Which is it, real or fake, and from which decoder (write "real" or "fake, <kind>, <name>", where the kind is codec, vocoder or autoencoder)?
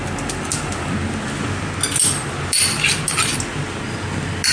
real